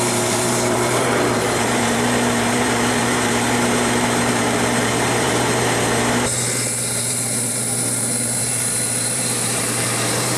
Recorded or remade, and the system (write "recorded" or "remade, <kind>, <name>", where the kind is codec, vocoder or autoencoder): remade, vocoder, BigVGAN v2